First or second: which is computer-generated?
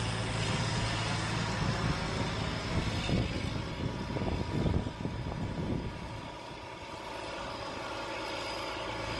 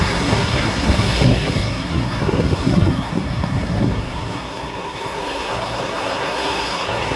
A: second